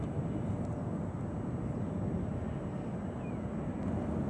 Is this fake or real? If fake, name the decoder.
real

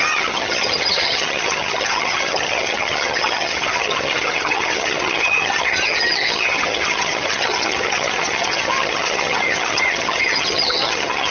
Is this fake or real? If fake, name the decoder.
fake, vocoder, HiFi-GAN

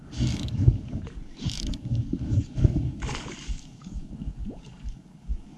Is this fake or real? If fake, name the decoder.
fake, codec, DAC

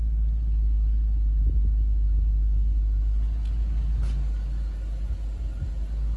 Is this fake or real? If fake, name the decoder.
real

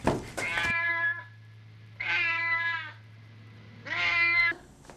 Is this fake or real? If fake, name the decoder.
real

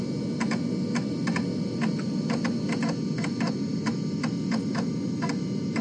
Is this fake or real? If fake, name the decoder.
real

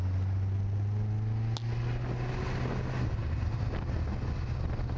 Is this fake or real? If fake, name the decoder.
real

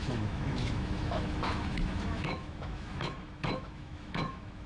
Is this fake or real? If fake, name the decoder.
fake, autoencoder, DAC-VAE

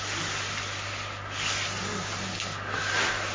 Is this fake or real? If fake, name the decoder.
real